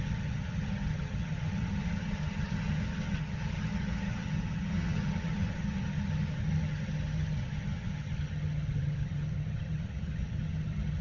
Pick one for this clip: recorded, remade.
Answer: remade